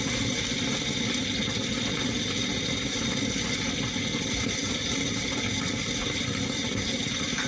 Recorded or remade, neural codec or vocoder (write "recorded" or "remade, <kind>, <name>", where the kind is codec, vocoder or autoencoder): recorded